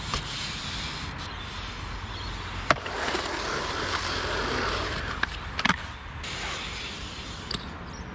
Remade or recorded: recorded